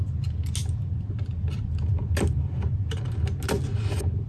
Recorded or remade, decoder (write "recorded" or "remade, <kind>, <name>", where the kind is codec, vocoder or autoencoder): recorded